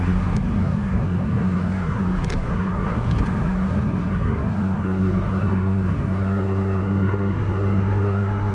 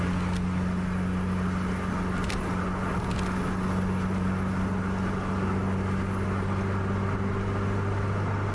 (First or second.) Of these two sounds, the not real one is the first